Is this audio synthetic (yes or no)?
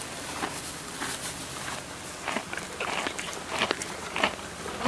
yes